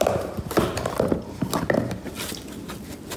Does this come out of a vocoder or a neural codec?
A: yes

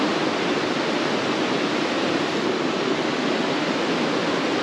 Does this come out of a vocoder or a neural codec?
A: no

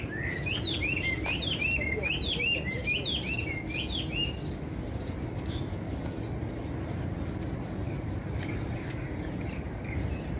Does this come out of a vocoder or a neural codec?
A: no